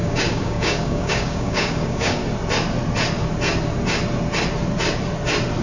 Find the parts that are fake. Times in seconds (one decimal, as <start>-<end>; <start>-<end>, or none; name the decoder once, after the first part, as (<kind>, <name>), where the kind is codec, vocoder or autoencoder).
0.0-2.2 (codec, DAC)